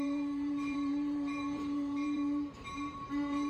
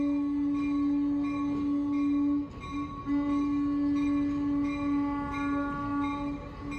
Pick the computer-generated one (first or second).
first